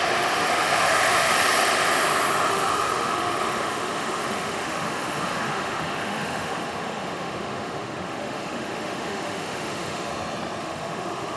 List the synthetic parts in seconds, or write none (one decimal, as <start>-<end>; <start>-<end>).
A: 0.0-1.3; 2.5-10.1; 10.6-11.4